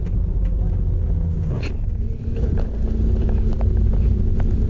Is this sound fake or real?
real